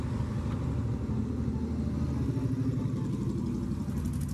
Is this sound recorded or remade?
recorded